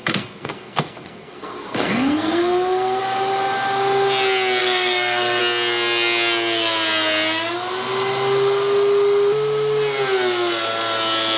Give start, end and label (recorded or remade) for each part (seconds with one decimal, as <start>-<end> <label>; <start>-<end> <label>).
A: 0.0-3.0 remade; 3.0-4.6 recorded; 4.6-5.4 remade; 5.4-11.4 recorded